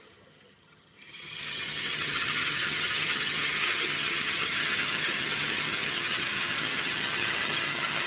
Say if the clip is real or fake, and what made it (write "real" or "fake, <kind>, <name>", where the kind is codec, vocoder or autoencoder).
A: fake, vocoder, HiFi-GAN